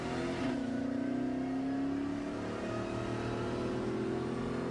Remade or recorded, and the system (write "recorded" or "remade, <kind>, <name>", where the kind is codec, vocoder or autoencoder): recorded